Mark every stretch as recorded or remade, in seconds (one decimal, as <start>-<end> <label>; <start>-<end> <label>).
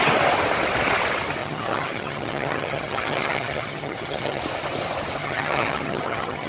0.0-1.4 recorded; 1.4-4.4 remade; 4.4-5.2 recorded; 5.2-6.5 remade